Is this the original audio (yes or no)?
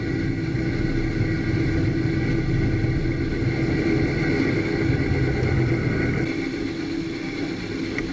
yes